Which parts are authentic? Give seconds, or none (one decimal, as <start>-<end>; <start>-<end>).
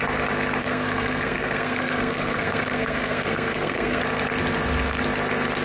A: 0.0-0.6; 4.0-5.6